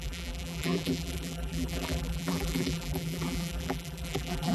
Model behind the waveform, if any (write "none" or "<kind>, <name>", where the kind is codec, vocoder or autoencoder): vocoder, BigVGAN v2